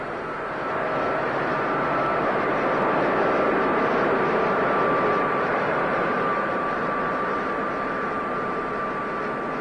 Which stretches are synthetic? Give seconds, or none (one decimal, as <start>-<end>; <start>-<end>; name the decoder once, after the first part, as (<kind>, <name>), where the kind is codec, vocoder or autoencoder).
5.1-8.8 (vocoder, BigVGAN v2)